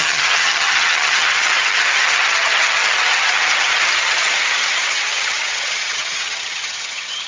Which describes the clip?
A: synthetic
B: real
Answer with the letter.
A